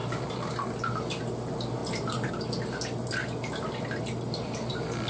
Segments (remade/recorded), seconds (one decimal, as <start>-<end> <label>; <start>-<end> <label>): 0.0-1.8 recorded; 1.8-2.3 remade; 2.3-5.1 recorded